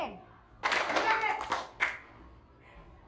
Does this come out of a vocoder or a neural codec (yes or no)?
no